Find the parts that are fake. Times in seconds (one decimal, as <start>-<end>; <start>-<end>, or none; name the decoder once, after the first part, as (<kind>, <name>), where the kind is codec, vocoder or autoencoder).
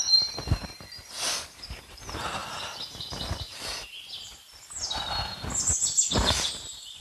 1.3-1.8 (codec, DAC)